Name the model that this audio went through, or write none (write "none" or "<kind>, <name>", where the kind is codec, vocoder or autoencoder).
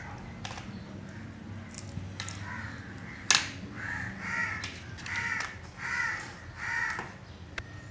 none